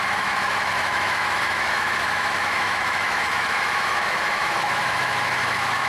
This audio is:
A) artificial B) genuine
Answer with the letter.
A